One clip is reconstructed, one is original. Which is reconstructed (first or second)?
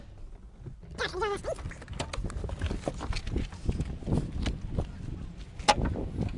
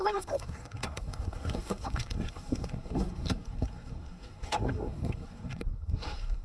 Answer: second